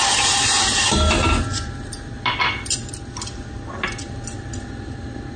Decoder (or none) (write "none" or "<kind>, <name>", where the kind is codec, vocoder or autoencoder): none